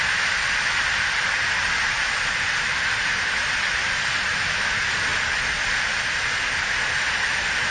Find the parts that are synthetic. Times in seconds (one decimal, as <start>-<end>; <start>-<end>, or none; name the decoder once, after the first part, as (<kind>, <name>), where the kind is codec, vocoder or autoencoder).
none